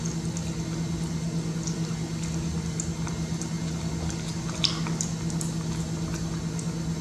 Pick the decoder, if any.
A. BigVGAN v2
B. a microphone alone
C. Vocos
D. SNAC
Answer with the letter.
B